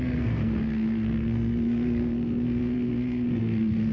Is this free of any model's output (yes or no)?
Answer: no